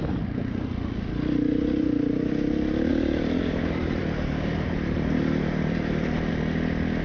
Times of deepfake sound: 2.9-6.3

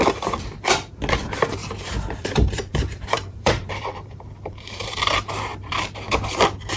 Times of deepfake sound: 1.6-5.7

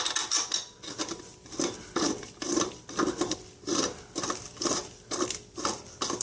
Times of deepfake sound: 0.0-6.2

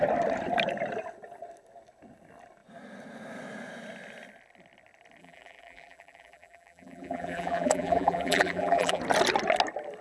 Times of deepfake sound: 5.2-9.0

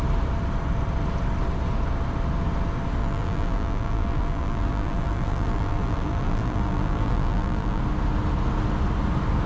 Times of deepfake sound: 3.0-7.8

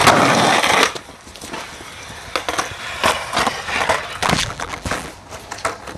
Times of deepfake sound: 4.2-5.1